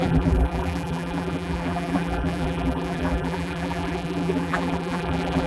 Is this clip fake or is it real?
fake